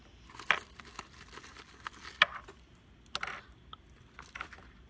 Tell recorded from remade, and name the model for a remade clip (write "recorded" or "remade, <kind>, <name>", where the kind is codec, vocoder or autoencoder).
recorded